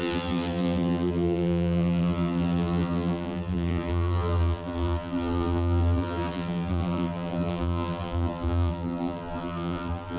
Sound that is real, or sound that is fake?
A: fake